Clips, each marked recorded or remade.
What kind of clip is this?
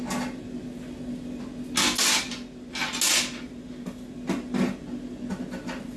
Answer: recorded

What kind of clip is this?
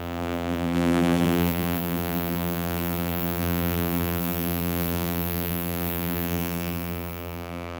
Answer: remade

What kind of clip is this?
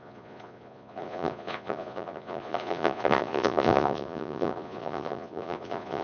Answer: remade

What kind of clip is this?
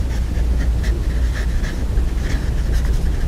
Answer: recorded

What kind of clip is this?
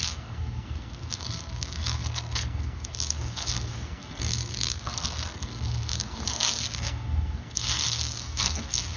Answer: remade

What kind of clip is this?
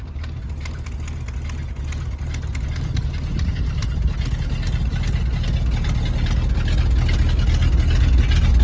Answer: recorded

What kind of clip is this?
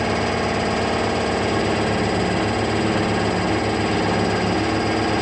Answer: recorded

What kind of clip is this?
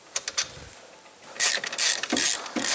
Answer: recorded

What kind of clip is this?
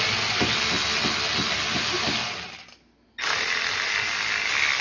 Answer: recorded